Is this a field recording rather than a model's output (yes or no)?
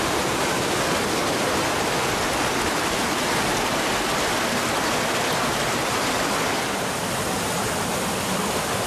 yes